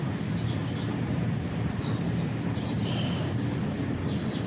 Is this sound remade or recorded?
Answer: recorded